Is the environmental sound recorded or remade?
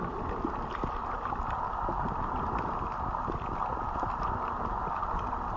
recorded